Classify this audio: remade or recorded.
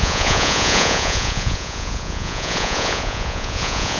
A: remade